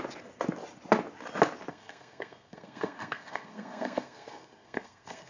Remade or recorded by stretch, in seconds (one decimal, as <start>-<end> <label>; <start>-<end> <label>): 0.0-1.7 recorded; 1.7-5.3 remade